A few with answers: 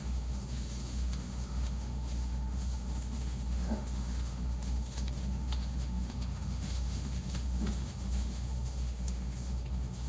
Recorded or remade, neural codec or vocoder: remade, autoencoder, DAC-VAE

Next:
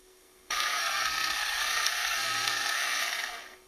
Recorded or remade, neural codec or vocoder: remade, codec, SNAC